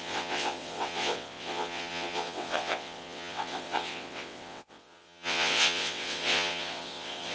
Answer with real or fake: fake